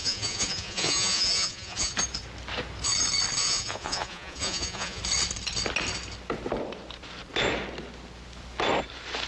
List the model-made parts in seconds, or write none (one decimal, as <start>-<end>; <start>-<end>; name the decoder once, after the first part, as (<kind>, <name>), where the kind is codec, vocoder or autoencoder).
0.0-1.9 (vocoder, Vocos); 3.4-5.0